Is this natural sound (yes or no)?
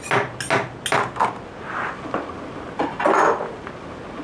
yes